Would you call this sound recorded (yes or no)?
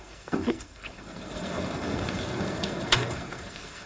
no